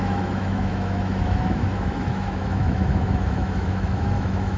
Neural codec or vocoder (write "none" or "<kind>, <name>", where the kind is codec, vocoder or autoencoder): autoencoder, DAC-VAE